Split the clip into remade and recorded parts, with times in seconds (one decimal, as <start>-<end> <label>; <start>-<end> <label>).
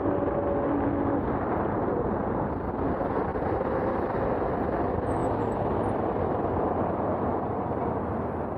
0.0-3.3 recorded; 3.3-4.2 remade; 4.2-8.6 recorded